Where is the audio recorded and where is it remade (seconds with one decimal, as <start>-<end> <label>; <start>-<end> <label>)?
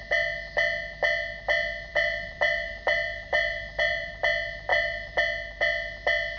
0.0-1.9 recorded; 1.9-4.2 remade; 4.2-4.7 recorded; 4.7-5.2 remade; 5.2-6.4 recorded